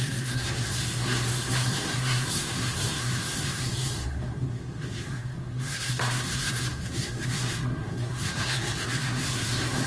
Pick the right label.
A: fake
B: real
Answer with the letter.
A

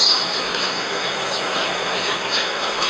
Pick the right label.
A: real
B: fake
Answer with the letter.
B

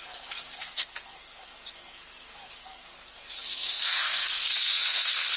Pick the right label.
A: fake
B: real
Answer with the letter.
A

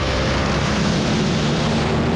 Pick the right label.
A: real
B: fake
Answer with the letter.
A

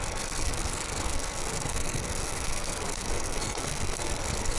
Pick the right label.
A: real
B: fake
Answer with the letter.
B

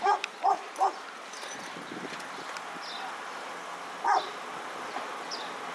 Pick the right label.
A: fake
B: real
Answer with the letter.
B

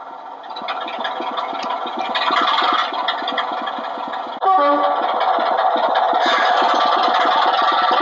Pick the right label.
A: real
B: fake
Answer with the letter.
A